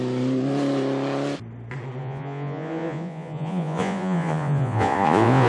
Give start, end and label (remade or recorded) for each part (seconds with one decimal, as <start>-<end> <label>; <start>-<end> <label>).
0.0-2.0 recorded; 2.0-5.5 remade